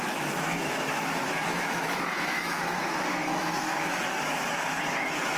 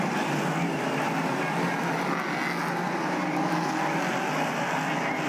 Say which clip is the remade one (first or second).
first